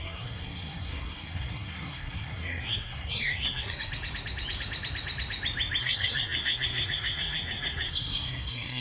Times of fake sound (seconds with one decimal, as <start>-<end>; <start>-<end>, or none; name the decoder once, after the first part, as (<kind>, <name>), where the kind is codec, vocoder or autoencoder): 0.0-3.9 (codec, SNAC); 5.8-8.8